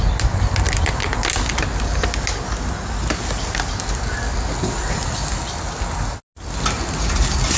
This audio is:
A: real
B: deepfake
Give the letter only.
A